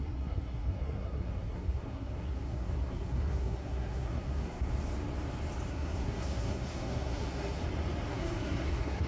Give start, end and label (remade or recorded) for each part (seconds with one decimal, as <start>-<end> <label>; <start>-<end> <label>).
0.0-4.7 remade; 4.7-5.7 recorded; 5.7-7.6 remade; 7.6-8.1 recorded; 8.1-9.1 remade